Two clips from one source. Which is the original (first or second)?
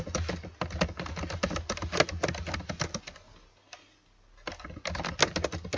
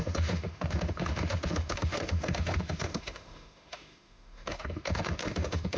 first